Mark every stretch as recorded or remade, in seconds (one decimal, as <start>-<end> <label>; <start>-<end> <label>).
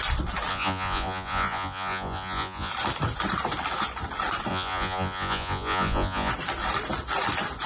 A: 0.0-0.5 recorded; 0.5-2.7 remade; 2.7-4.5 recorded; 4.5-6.3 remade; 6.3-7.7 recorded